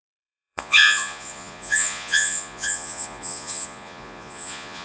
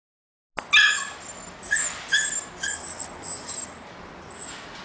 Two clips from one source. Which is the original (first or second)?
second